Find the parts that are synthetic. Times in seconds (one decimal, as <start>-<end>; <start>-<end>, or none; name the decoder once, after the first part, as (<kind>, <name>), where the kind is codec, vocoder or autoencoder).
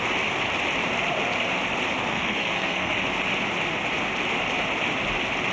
2.1-2.9 (codec, SNAC)